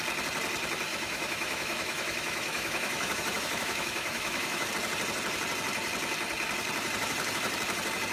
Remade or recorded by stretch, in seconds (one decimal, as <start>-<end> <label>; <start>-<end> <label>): 0.0-0.9 recorded; 0.9-4.7 remade; 4.7-8.1 recorded